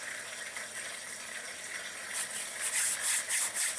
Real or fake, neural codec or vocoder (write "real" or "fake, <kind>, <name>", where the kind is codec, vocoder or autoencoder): real